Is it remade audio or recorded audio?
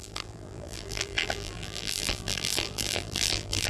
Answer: remade